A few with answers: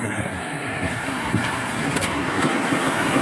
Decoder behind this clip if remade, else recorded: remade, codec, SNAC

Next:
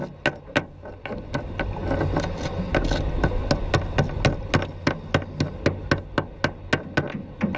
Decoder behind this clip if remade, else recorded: recorded